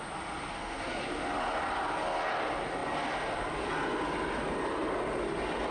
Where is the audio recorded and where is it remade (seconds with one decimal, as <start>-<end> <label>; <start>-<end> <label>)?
0.0-0.5 recorded; 0.5-1.0 remade; 1.0-5.7 recorded